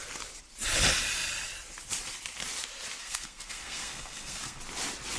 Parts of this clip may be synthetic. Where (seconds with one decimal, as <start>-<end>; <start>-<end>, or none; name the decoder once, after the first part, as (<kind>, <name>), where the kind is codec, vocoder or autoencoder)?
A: 3.0-4.6 (codec, SNAC)